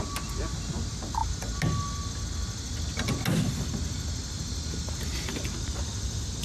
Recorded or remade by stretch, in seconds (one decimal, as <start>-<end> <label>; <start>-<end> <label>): 0.0-6.4 recorded

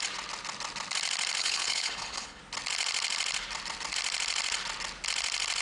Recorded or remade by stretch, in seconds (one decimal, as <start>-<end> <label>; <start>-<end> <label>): 0.0-1.4 recorded; 1.4-2.4 remade; 2.4-5.6 recorded

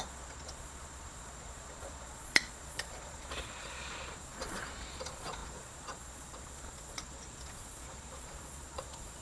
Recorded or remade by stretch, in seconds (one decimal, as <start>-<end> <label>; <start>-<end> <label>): 0.0-9.2 remade

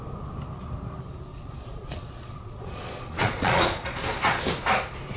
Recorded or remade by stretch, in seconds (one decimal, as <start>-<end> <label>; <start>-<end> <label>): 0.0-1.3 recorded; 1.3-4.4 remade; 4.4-5.2 recorded

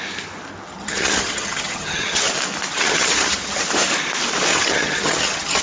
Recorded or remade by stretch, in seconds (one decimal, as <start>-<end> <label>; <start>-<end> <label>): 0.0-0.7 recorded; 0.7-2.3 remade; 2.3-2.7 recorded; 2.7-3.6 remade; 3.6-4.5 recorded; 4.5-5.6 remade

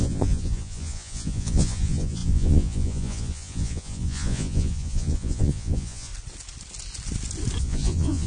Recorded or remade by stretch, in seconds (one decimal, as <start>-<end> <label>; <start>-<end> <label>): 0.0-6.1 remade; 6.1-7.6 recorded; 7.6-8.3 remade

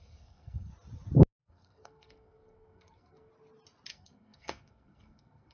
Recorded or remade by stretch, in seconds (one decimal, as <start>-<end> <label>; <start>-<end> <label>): 0.0-0.7 remade; 0.7-1.4 recorded; 1.4-3.3 remade; 3.3-3.9 recorded; 3.9-5.5 remade